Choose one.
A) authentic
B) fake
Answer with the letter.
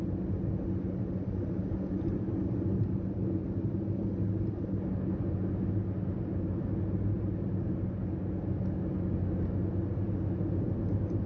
A